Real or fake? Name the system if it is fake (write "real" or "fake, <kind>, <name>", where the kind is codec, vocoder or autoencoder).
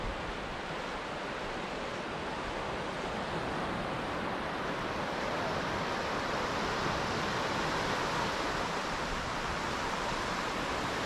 real